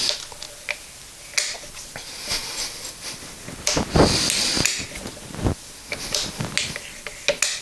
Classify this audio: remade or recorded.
recorded